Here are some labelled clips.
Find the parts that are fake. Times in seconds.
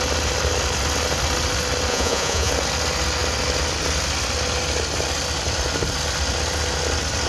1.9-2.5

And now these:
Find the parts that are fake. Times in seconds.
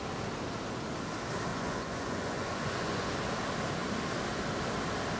1.5-3.1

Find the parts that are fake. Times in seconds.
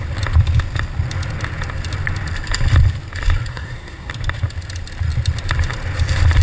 3.5-4.1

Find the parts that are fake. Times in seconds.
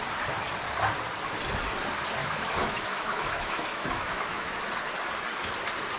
2.2-4.6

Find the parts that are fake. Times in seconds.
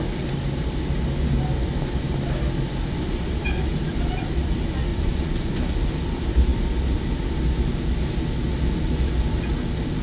4.9-5.6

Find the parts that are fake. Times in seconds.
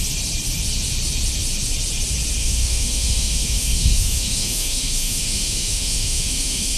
2.4-6.8